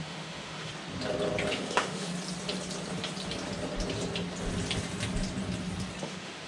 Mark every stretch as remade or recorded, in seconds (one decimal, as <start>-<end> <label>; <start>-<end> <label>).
0.0-0.7 remade; 0.7-1.5 recorded; 1.5-2.1 remade; 2.1-6.0 recorded; 6.0-6.5 remade